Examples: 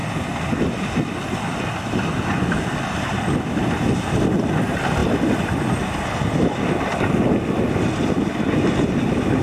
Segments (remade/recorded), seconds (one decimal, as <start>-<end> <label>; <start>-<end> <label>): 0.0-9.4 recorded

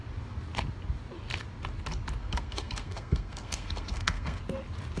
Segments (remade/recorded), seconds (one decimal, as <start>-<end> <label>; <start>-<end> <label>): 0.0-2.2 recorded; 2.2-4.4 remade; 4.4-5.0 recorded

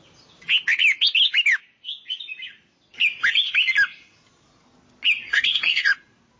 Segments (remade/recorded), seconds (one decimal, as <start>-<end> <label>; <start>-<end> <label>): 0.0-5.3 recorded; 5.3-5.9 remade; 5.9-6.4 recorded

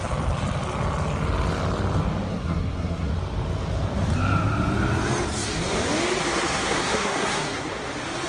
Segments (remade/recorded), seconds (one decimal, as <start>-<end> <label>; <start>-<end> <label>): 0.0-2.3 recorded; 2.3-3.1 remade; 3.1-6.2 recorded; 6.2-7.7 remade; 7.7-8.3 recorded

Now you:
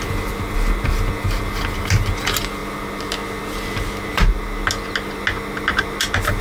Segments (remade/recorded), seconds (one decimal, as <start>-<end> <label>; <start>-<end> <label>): 0.0-6.4 recorded